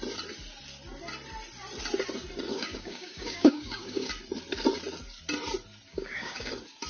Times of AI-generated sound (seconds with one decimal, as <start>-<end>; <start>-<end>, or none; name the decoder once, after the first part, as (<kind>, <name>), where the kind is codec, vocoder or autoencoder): 2.5-4.1 (codec, DAC); 5.9-6.5